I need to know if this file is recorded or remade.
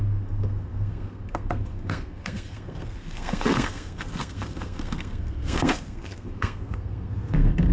remade